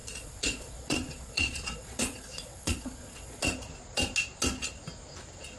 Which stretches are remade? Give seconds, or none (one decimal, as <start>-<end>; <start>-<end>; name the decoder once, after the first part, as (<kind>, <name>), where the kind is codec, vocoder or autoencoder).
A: 0.0-3.4 (vocoder, Vocos)